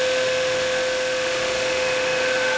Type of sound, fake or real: fake